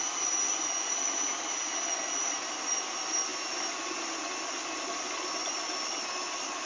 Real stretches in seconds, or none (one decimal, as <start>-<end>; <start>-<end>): 0.0-6.7